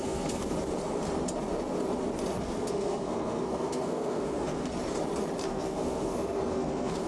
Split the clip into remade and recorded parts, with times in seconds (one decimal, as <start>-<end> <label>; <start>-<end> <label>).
0.0-0.4 remade; 0.4-2.4 recorded; 2.4-4.6 remade; 4.6-5.5 recorded; 5.5-7.1 remade